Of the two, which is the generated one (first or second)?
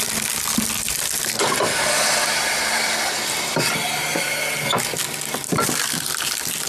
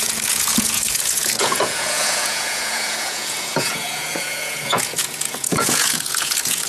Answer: second